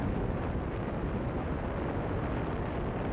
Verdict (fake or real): real